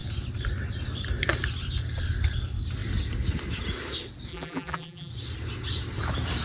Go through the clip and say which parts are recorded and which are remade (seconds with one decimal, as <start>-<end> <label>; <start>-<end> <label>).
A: 0.0-4.3 recorded; 4.3-5.1 remade; 5.1-6.4 recorded